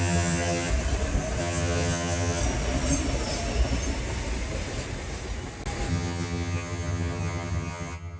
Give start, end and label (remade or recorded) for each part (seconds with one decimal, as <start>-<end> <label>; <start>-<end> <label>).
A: 0.0-0.7 remade; 0.7-1.4 recorded; 1.4-2.4 remade; 2.4-5.9 recorded; 5.9-8.2 remade